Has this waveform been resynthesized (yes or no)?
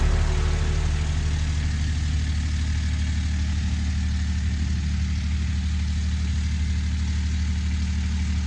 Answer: no